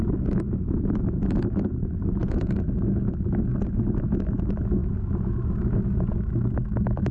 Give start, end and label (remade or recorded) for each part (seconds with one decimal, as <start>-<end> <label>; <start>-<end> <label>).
0.0-7.1 remade